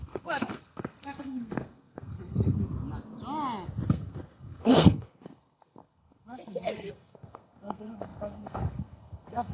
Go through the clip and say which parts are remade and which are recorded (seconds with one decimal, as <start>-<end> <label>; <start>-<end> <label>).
0.0-2.6 remade; 2.6-3.9 recorded; 3.9-9.5 remade